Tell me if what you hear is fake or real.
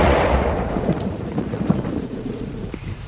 fake